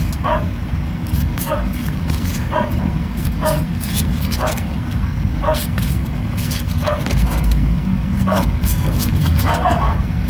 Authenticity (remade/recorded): remade